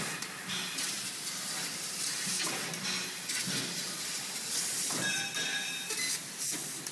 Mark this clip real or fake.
real